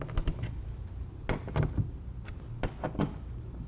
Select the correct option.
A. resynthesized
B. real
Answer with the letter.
B